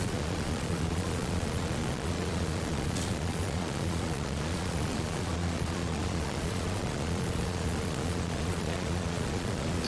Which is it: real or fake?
fake